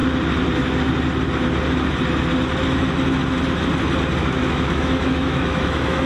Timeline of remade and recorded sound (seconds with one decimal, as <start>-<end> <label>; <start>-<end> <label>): 0.0-4.2 recorded; 4.2-6.1 remade